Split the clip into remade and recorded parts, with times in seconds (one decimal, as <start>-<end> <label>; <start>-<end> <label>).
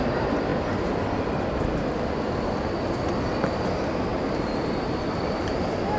0.0-4.1 recorded; 4.1-5.2 remade; 5.2-6.0 recorded